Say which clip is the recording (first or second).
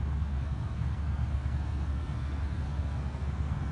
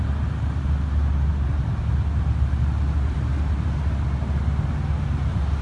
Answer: second